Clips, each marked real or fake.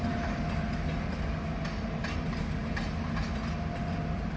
real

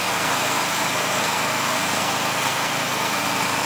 fake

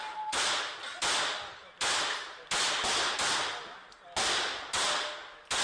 real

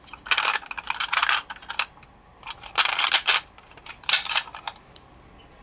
real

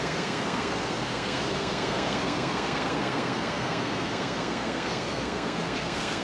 fake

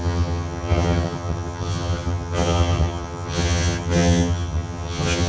fake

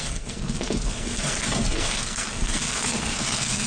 fake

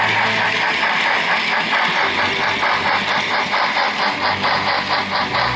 real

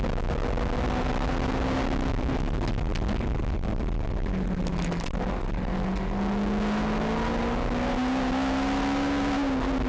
real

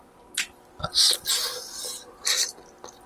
real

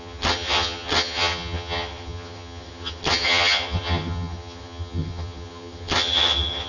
fake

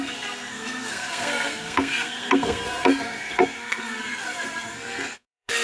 fake